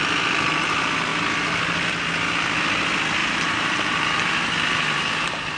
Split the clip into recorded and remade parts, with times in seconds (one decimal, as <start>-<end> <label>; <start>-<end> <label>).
0.0-3.2 recorded; 3.2-5.6 remade